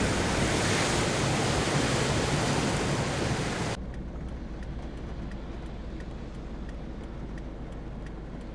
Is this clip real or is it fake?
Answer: real